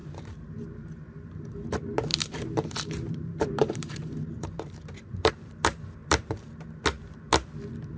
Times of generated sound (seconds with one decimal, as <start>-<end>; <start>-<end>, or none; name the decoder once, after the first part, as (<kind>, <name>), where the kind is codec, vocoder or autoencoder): 0.0-1.5 (vocoder, BigVGAN v2); 2.1-5.3; 6.0-6.8